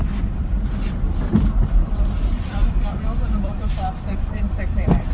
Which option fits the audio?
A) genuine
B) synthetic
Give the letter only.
B